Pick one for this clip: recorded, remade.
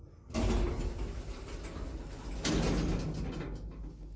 recorded